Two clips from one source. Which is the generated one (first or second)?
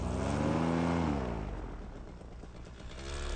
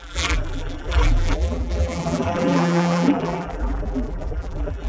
second